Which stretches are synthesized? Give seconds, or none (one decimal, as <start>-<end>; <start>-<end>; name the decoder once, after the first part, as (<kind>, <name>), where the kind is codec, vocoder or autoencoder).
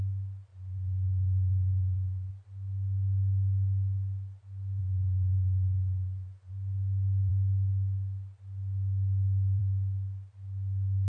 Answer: 0.5-2.3 (vocoder, Vocos); 4.8-6.5